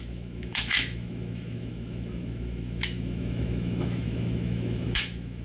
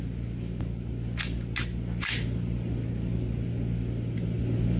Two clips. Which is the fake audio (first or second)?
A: first